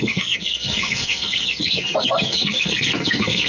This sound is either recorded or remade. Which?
remade